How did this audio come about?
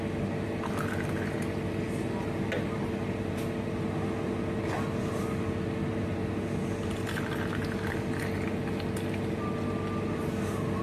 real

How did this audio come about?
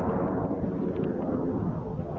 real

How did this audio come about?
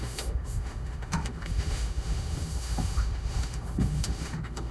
fake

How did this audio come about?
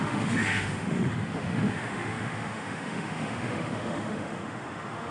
fake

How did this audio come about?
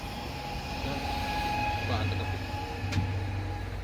real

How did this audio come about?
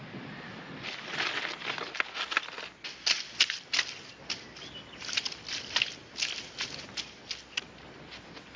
real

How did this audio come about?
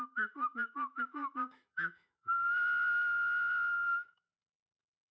fake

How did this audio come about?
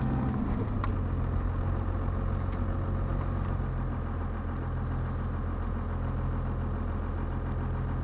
real